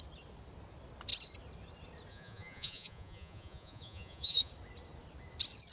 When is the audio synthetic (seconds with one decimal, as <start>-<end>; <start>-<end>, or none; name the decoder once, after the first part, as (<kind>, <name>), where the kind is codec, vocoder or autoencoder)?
2.1-4.5 (vocoder, Vocos)